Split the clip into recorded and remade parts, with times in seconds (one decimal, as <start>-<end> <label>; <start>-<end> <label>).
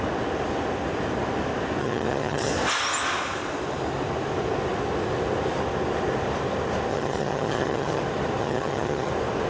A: 0.0-1.8 recorded; 1.8-2.5 remade; 2.5-6.9 recorded; 6.9-8.0 remade; 8.0-8.4 recorded; 8.4-9.1 remade; 9.1-9.5 recorded